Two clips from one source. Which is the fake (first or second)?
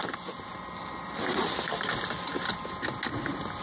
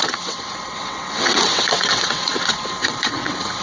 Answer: second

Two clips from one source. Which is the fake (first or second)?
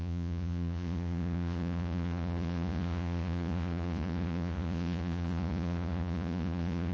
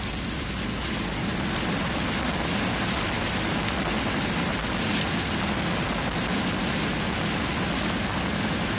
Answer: first